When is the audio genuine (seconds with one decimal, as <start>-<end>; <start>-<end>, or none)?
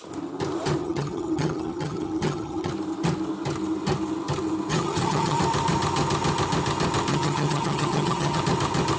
0.0-0.8; 2.7-4.7; 5.4-7.1; 8.4-9.0